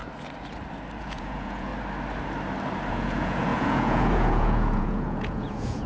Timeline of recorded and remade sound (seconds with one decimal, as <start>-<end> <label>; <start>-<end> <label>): 0.0-1.0 recorded; 1.0-1.7 remade; 1.7-2.9 recorded; 2.9-5.9 remade